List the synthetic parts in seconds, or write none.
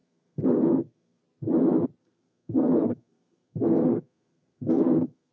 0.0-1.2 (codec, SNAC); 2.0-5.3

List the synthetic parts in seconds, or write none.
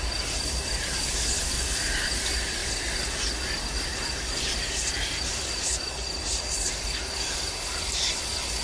none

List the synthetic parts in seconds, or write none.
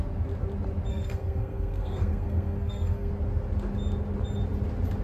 0.9-3.1 (codec, SNAC)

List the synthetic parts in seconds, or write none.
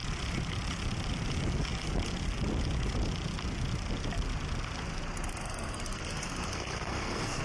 5.3-7.4 (codec, SNAC)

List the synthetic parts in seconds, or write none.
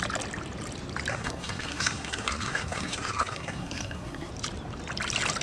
1.1-4.3 (codec, SNAC)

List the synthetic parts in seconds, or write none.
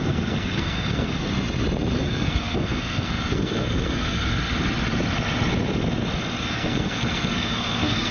0.0-1.3 (codec, SNAC); 2.0-4.3; 6.4-8.1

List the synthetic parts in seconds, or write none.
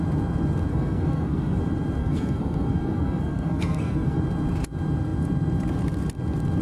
0.7-1.6 (codec, SNAC); 2.0-4.2